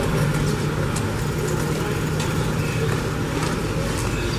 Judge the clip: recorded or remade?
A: recorded